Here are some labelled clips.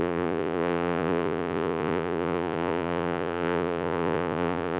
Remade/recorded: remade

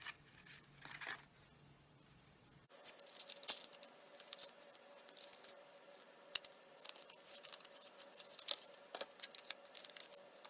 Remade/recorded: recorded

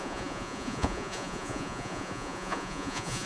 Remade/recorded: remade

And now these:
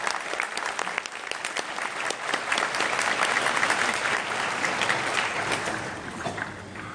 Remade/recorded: recorded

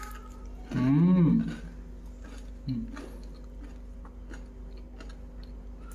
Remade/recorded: recorded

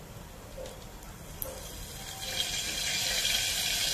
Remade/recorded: recorded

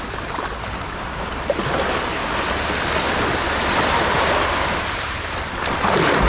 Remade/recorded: recorded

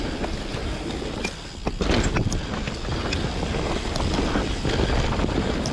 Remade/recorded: recorded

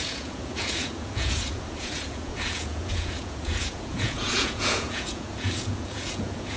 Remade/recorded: remade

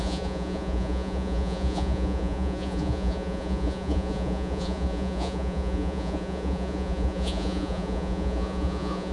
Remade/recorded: remade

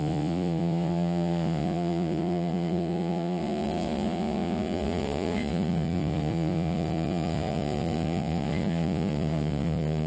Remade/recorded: remade